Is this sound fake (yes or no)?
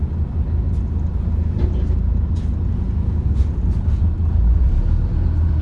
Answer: no